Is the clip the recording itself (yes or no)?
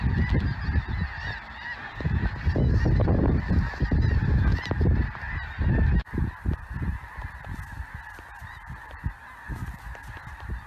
yes